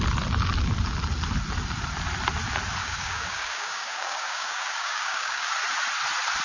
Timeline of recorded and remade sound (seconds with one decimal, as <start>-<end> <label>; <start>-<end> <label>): 0.0-2.8 recorded; 2.8-5.5 remade; 5.5-6.4 recorded